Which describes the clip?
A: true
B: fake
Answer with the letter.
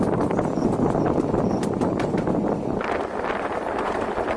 A